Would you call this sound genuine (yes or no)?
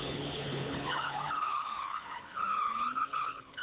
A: no